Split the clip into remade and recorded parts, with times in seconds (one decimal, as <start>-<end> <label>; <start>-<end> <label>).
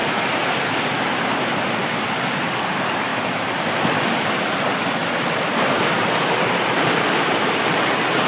0.0-8.3 recorded